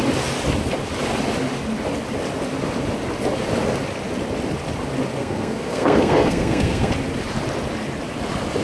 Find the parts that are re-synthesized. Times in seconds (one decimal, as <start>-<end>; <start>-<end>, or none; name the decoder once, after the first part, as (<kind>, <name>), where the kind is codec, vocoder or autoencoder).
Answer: 5.2-6.9 (codec, SNAC)